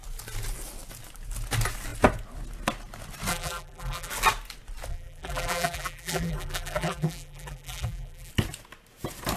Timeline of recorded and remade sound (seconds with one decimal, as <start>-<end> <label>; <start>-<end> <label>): 0.0-3.3 recorded; 3.3-4.1 remade; 4.1-4.9 recorded; 4.9-8.3 remade; 8.3-9.4 recorded